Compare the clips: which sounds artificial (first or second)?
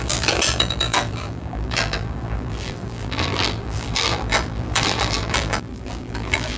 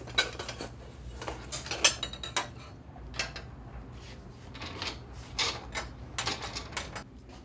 first